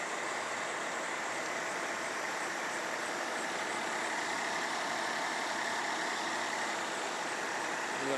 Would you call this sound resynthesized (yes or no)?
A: yes